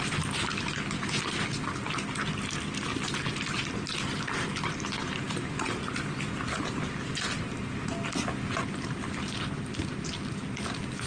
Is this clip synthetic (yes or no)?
no